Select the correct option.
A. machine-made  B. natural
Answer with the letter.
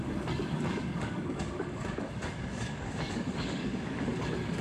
A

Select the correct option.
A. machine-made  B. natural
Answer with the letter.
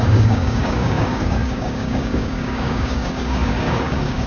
A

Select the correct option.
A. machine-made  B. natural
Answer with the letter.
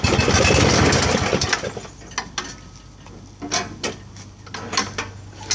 B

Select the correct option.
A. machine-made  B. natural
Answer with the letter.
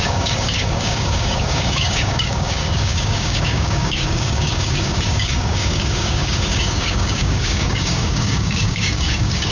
A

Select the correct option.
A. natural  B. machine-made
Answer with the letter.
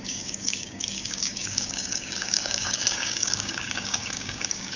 B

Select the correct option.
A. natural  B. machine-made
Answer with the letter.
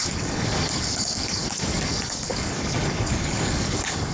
B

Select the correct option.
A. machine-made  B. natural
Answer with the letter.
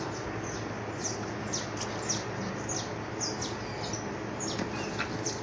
B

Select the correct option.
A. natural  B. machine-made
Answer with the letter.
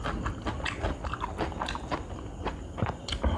A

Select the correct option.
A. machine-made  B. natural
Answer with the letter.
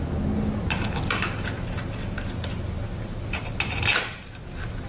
B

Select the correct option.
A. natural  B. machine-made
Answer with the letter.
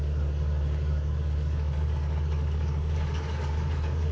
B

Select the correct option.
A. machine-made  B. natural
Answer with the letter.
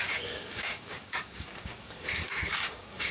A